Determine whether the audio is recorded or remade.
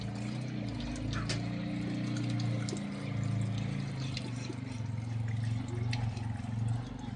recorded